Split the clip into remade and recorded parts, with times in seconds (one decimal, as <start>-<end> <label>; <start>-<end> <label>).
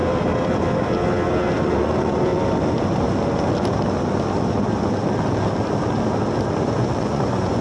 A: 0.0-1.6 recorded; 1.6-2.3 remade; 2.3-6.6 recorded; 6.6-7.6 remade